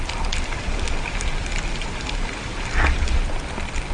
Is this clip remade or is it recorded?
recorded